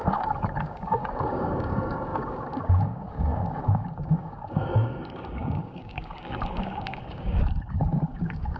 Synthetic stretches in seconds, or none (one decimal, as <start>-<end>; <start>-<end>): 0.0-8.6